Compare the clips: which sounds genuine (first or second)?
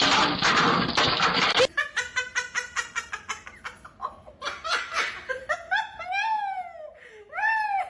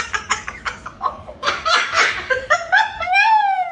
first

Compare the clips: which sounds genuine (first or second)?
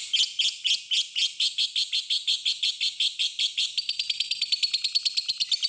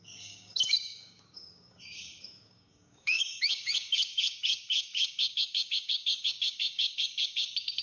first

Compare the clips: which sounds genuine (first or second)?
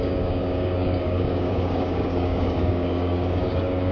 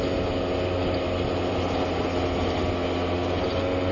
second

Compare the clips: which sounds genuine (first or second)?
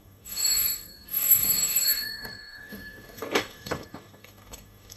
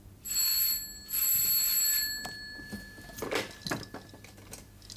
second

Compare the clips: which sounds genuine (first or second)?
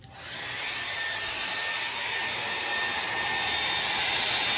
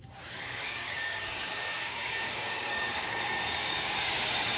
first